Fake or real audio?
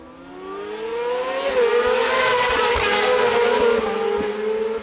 real